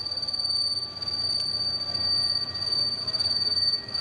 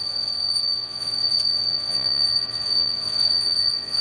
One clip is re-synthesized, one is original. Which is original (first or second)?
first